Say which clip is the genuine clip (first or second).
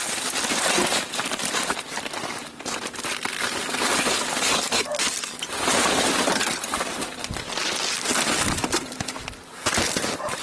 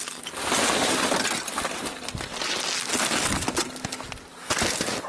second